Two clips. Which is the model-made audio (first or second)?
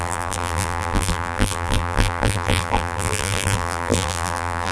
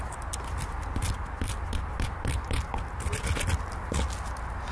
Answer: first